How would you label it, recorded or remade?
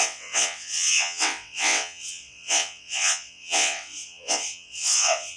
remade